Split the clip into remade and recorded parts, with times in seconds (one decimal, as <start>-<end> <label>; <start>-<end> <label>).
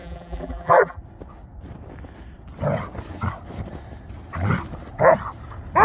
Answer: 0.0-1.0 remade; 1.0-5.8 recorded